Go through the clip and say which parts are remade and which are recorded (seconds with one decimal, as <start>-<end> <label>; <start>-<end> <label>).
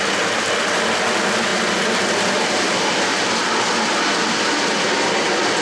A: 0.0-1.5 recorded; 1.5-4.9 remade; 4.9-5.6 recorded